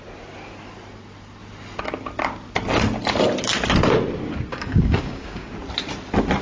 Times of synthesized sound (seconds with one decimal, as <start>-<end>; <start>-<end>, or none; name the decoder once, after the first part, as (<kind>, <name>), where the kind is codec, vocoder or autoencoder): 4.5-5.5 (codec, DAC)